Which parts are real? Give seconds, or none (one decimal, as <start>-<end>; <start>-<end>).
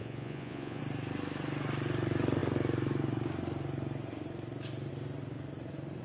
0.8-6.0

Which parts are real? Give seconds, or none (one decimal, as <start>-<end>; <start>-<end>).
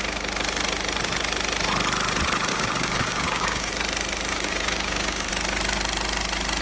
0.0-2.5; 3.7-4.3; 5.3-6.6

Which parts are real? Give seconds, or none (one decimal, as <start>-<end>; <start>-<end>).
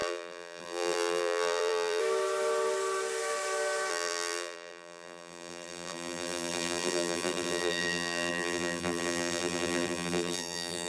2.0-3.9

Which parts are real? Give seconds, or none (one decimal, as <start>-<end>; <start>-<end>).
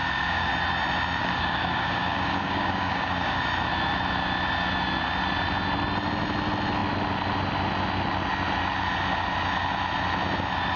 0.5-1.2; 3.4-10.8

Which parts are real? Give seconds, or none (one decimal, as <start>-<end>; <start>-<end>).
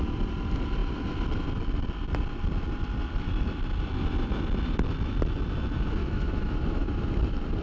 0.0-6.0; 6.9-7.6